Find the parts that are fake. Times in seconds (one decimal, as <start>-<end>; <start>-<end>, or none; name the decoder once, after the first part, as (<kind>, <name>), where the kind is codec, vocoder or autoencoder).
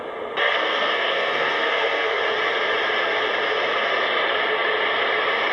0.4-2.2 (codec, SNAC)